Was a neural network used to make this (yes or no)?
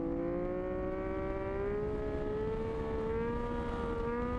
no